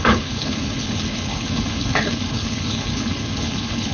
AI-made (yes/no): yes